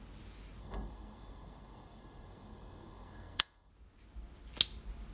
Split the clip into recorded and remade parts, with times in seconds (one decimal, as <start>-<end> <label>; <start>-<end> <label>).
0.0-0.6 recorded; 0.6-3.7 remade; 3.7-5.1 recorded